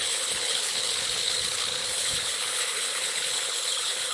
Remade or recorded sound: remade